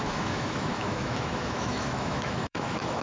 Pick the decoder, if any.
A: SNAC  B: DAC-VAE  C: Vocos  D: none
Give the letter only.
B